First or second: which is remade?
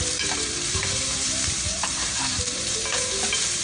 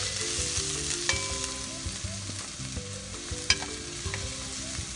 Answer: first